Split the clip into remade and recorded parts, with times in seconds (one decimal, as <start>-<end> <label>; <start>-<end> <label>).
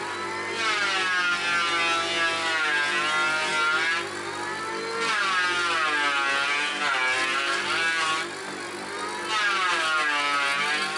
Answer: 0.0-11.0 recorded